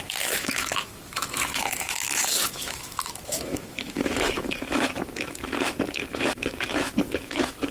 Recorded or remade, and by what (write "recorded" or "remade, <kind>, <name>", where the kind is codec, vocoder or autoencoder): remade, autoencoder, DAC-VAE